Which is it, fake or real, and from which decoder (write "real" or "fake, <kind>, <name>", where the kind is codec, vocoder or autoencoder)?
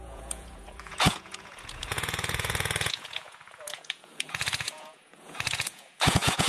fake, vocoder, Vocos